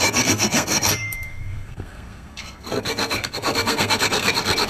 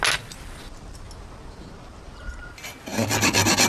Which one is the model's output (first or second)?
first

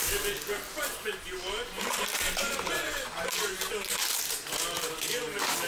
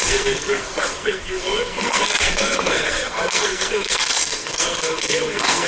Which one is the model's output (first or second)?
second